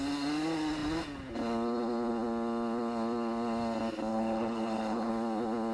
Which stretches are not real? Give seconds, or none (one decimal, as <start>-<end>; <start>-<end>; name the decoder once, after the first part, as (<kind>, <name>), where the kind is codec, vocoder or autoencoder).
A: 4.1-5.1 (codec, HILCodec)